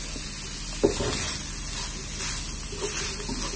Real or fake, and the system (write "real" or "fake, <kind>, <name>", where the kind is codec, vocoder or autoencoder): real